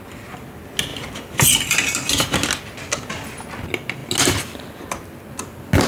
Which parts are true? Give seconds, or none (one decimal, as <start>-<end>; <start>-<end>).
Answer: 0.0-5.9